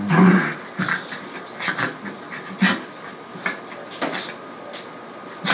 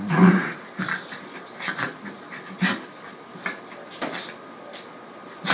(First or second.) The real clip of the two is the first